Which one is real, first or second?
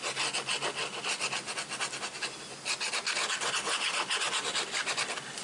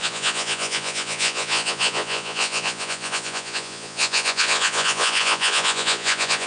first